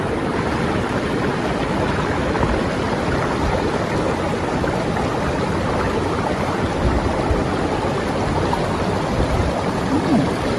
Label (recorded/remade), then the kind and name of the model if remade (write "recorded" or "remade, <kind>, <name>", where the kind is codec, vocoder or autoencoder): recorded